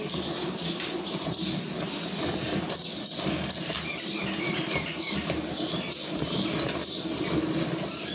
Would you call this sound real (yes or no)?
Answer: yes